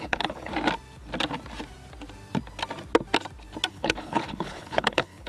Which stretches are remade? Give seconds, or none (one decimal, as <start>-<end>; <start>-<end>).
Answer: 0.0-0.5; 3.7-5.3